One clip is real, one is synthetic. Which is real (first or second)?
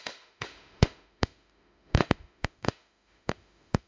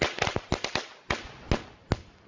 second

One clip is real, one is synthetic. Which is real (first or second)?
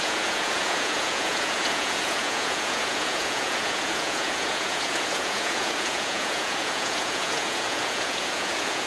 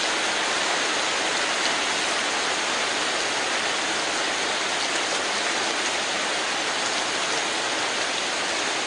second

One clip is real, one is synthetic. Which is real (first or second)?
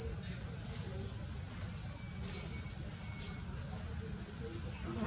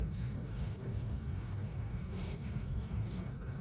first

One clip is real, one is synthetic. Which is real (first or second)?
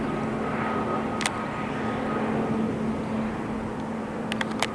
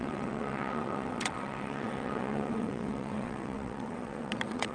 first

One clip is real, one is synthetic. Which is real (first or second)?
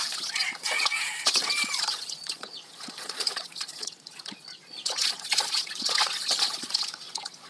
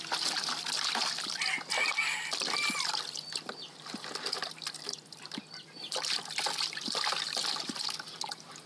second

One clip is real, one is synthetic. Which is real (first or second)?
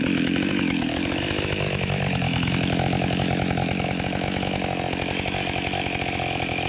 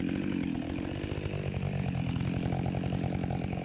second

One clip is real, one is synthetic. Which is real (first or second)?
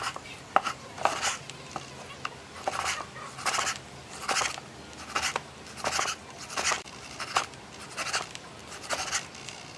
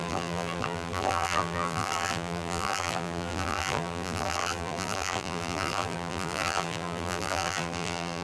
first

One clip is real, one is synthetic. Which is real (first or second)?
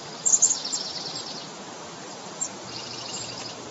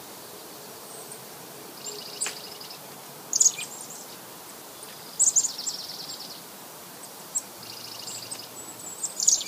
second